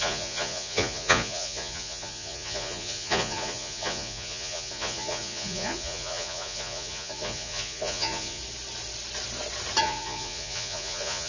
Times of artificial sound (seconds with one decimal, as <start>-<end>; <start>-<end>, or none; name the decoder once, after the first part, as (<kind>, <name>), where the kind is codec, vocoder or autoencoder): 0.0-8.4 (vocoder, Vocos); 9.8-11.3

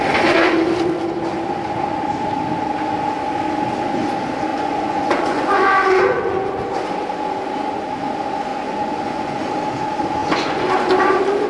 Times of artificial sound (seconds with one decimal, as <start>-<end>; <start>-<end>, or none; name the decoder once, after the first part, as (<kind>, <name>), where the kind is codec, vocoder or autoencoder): 4.5-6.5 (vocoder, Vocos); 8.5-9.5; 10.2-10.9

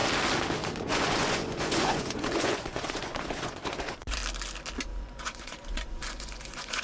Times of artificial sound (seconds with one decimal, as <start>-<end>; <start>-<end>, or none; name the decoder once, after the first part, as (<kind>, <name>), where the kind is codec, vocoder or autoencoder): 0.8-4.2 (vocoder, Vocos); 5.0-6.8

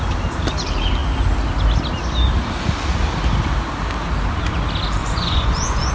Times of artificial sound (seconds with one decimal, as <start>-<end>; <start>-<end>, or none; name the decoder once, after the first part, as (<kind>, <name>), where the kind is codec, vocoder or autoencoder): 5.0-5.9 (vocoder, Vocos)

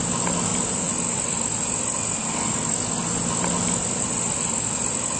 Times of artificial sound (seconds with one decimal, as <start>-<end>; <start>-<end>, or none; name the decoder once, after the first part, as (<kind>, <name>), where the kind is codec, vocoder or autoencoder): none

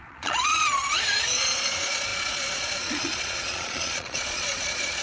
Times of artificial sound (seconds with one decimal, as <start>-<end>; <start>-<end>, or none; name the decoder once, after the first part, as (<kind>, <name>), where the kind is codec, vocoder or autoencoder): 0.0-5.0 (vocoder, Vocos)